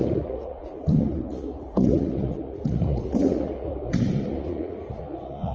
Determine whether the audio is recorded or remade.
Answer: remade